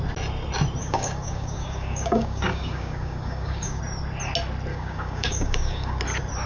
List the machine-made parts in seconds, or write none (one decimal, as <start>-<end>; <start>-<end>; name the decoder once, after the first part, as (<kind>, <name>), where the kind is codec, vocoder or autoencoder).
0.8-3.8 (codec, DAC); 4.7-6.0